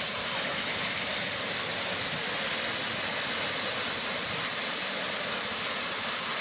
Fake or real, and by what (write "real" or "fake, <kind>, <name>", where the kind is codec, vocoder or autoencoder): real